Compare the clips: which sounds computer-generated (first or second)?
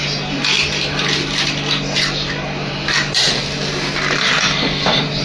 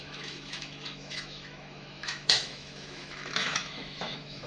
second